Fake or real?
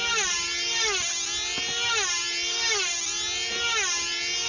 real